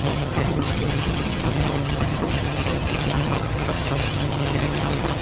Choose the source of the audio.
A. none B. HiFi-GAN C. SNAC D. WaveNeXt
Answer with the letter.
B